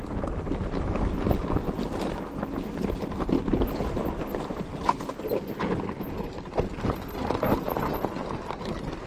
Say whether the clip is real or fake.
real